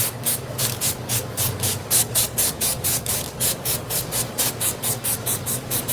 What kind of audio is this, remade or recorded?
remade